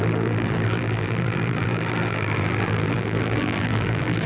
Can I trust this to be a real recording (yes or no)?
no